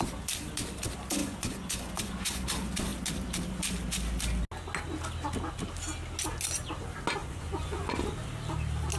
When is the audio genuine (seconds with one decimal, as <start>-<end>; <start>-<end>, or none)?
0.0-1.2; 2.4-7.2; 8.0-9.0